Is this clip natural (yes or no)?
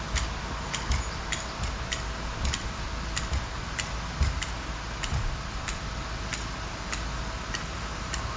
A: yes